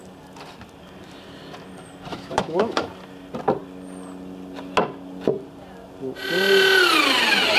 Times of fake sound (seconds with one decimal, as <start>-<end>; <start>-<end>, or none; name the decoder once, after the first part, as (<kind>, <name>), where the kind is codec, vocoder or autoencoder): 2.1-2.9 (autoencoder, DAC-VAE)